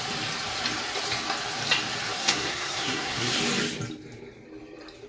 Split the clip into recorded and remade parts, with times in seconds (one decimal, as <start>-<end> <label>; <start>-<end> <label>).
0.0-2.2 recorded; 2.2-3.4 remade; 3.4-5.1 recorded